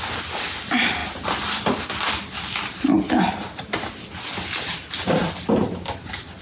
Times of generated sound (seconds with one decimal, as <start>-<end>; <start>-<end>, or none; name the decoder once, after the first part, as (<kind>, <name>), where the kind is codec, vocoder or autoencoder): none